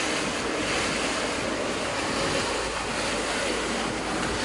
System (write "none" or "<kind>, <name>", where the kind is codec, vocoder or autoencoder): none